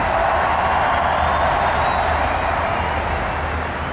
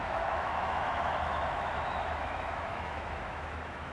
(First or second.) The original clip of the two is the first